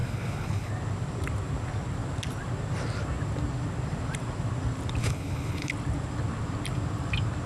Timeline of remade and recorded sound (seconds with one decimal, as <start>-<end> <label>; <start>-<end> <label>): 0.0-0.7 remade; 0.7-5.0 recorded; 5.0-5.7 remade; 5.7-7.5 recorded